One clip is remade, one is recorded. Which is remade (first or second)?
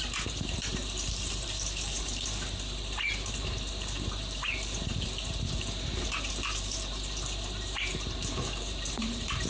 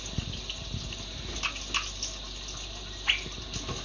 first